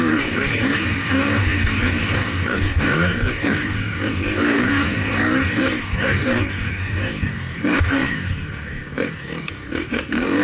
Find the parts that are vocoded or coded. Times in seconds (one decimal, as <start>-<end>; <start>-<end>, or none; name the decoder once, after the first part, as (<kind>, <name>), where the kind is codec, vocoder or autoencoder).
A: 0.0-10.4 (codec, DAC)